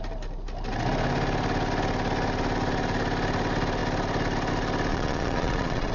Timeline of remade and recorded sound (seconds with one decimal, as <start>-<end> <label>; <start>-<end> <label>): 0.0-4.9 recorded; 4.9-5.9 remade

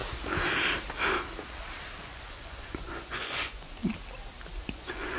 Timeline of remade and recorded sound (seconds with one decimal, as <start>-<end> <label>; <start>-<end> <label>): 0.0-2.0 recorded; 2.0-3.8 remade; 3.8-4.6 recorded; 4.6-5.2 remade

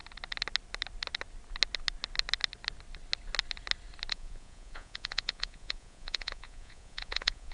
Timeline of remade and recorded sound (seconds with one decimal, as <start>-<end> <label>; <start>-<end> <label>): 0.0-4.1 recorded; 4.1-7.5 remade

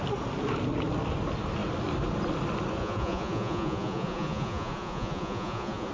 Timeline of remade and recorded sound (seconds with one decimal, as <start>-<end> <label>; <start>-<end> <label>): 0.0-2.8 recorded; 2.8-5.9 remade

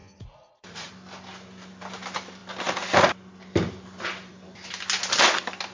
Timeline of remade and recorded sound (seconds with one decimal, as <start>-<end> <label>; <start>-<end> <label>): 0.0-0.9 remade; 0.9-5.7 recorded

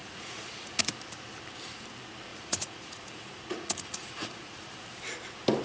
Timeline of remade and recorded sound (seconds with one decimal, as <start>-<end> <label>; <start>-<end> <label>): 0.0-0.8 remade; 0.8-2.3 recorded; 2.3-4.7 remade; 4.7-5.6 recorded